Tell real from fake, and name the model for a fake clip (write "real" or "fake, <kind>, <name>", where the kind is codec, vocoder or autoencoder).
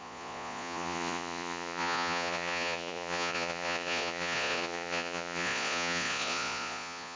fake, vocoder, Vocos